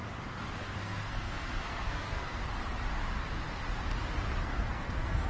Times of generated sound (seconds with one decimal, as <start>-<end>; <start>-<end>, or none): 0.6-2.4; 4.4-5.3